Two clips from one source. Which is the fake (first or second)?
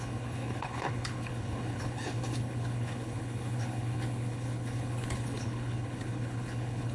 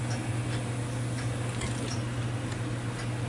first